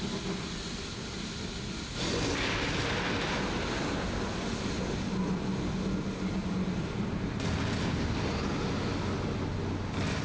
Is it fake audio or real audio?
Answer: real